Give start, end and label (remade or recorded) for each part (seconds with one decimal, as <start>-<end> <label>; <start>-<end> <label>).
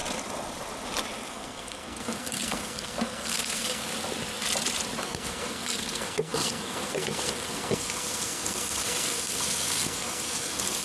0.0-1.3 recorded; 1.3-3.9 remade; 3.9-5.0 recorded; 5.0-10.8 remade